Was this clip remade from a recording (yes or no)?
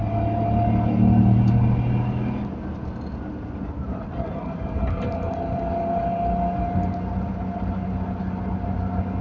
no